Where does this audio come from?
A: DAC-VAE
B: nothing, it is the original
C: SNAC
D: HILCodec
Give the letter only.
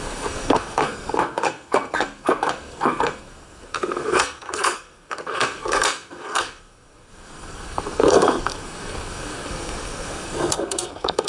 C